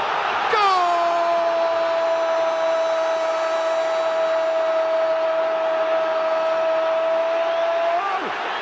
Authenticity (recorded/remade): recorded